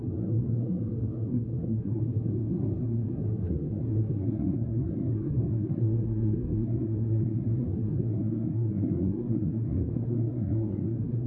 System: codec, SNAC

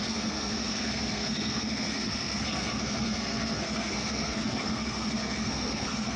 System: codec, SNAC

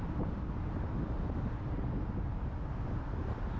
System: none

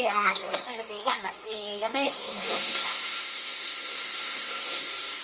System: codec, SNAC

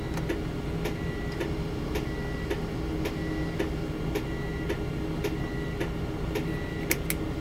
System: none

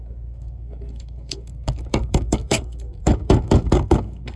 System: codec, SNAC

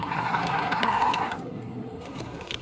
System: codec, SNAC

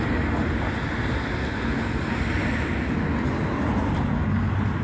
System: none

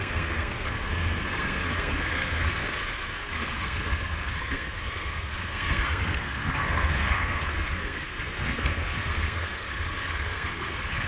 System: codec, SNAC